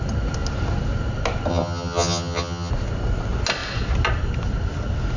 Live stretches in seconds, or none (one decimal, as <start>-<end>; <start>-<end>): 0.0-1.5; 2.7-5.2